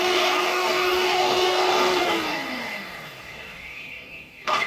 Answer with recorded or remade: remade